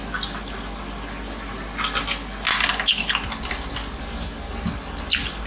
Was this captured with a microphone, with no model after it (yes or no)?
yes